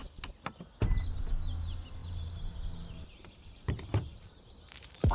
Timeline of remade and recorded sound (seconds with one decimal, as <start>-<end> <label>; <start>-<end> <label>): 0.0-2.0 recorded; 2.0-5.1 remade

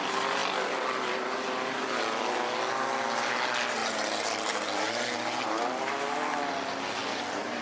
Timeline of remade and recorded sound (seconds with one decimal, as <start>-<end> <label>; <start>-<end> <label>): 0.0-7.6 recorded

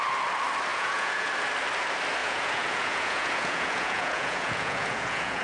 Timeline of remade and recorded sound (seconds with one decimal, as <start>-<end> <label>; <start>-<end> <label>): 0.0-0.7 recorded; 0.7-1.3 remade; 1.3-2.2 recorded; 2.2-5.4 remade

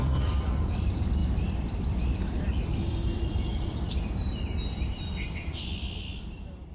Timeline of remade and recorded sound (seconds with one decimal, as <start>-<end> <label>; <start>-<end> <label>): 0.0-6.7 remade

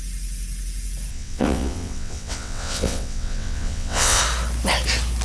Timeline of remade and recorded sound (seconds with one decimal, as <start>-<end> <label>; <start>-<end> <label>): 0.0-1.1 recorded; 1.1-4.2 remade; 4.2-5.2 recorded

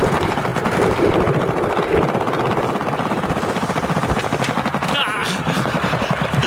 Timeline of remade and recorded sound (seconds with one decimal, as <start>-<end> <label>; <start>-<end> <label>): 0.0-6.5 recorded